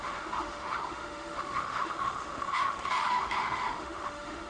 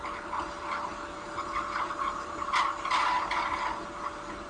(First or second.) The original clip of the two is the second